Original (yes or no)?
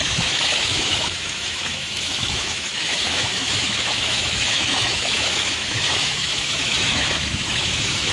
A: no